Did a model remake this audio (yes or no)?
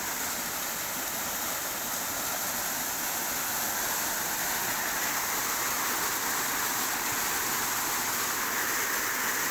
no